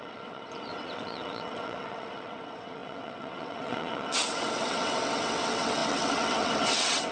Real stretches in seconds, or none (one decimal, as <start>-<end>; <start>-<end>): none